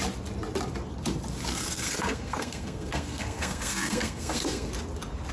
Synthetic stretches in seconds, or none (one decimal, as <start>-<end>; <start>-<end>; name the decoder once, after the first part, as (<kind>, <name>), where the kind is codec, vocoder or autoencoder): 1.5-4.7 (codec, SNAC)